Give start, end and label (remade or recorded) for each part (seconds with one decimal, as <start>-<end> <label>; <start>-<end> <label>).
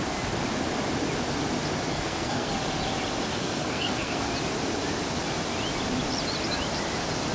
0.0-1.9 recorded; 1.9-2.5 remade; 2.5-3.3 recorded; 3.3-4.3 remade; 4.3-7.3 recorded